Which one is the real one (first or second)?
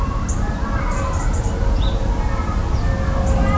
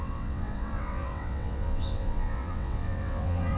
first